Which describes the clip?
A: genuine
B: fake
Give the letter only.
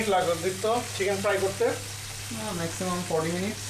A